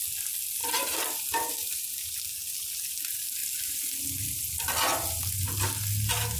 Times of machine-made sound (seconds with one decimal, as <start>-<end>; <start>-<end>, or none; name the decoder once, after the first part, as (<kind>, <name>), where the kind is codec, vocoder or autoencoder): 0.6-1.8 (vocoder, BigVGAN v2)